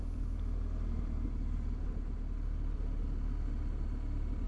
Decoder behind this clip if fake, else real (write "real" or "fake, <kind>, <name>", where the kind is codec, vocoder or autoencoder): real